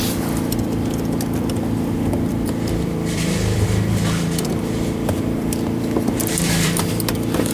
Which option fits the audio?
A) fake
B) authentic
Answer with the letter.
A